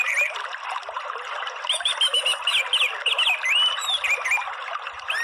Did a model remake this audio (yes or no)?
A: no